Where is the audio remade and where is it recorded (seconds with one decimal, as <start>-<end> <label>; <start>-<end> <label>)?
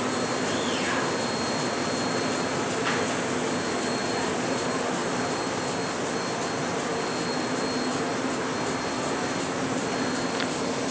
0.0-4.0 recorded; 4.0-4.7 remade; 4.7-10.9 recorded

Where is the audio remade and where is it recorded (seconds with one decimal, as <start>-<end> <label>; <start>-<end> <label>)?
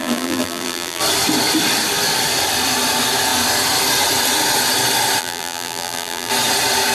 0.0-1.0 remade; 1.0-5.2 recorded; 5.2-6.3 remade; 6.3-6.9 recorded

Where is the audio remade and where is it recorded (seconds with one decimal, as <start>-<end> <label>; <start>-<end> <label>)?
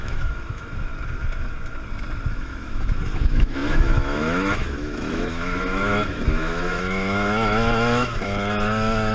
0.0-0.9 remade; 0.9-2.3 recorded; 2.3-9.1 remade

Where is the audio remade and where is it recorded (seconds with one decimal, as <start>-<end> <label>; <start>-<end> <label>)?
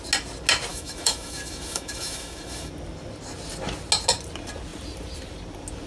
0.0-0.7 recorded; 0.7-2.7 remade; 2.7-5.9 recorded